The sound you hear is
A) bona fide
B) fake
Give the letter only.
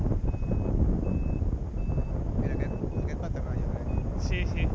A